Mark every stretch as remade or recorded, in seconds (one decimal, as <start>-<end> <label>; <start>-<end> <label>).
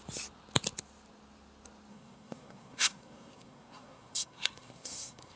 0.0-1.9 recorded; 1.9-5.4 remade